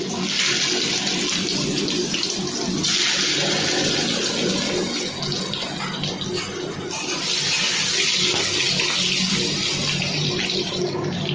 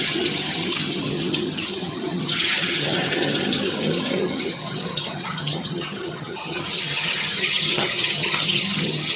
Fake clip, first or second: second